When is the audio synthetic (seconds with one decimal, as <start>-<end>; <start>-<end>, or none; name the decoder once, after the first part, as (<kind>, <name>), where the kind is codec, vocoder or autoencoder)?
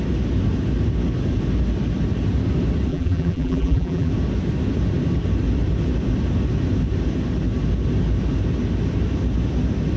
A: 2.9-4.1 (vocoder, BigVGAN v2)